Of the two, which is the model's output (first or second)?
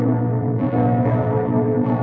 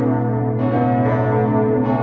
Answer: first